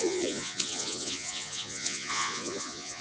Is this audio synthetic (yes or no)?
yes